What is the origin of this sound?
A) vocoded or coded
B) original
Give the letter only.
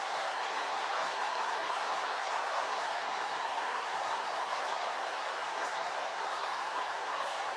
A